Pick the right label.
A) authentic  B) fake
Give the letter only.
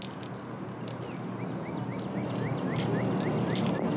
A